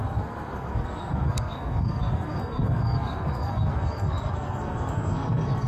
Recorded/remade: remade